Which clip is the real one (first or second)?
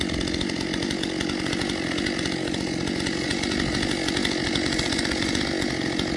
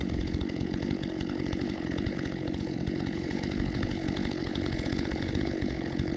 first